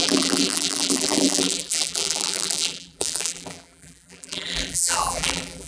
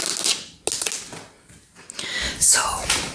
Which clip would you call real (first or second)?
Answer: second